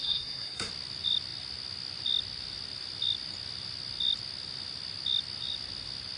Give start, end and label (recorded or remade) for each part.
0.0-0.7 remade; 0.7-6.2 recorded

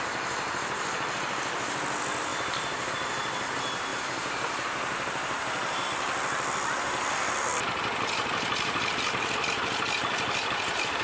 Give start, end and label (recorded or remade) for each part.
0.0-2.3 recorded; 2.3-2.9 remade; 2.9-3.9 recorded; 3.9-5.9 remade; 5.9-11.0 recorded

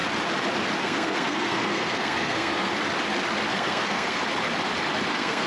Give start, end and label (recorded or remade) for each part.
0.0-0.8 recorded; 0.8-2.7 remade; 2.7-3.5 recorded; 3.5-4.2 remade; 4.2-5.1 recorded; 5.1-5.5 remade